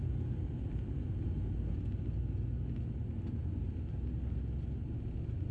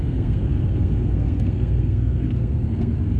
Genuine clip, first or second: first